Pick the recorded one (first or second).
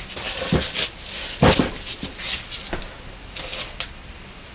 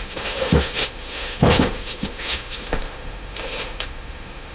first